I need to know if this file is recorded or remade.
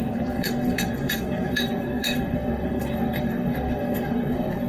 remade